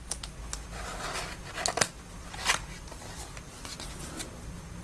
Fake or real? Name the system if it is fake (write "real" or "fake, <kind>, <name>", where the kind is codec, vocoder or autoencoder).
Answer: real